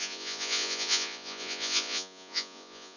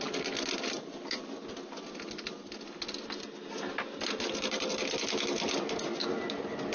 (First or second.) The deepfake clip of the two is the first